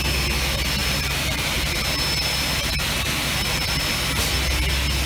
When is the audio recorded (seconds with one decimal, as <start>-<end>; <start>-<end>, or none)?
0.0-0.8; 3.9-5.1